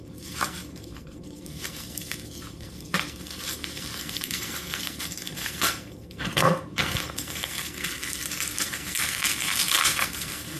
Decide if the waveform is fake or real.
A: fake